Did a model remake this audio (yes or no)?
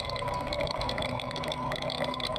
yes